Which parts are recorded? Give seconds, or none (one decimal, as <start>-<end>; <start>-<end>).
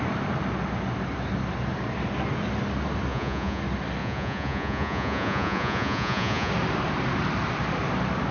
0.0-3.1; 3.6-4.0; 6.5-8.3